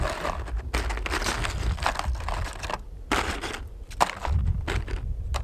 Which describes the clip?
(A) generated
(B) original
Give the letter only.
B